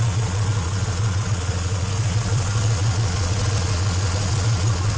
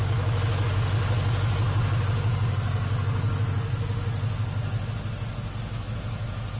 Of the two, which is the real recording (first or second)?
second